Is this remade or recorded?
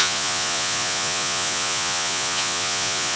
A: remade